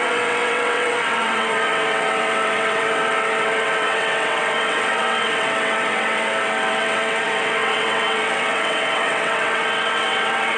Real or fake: fake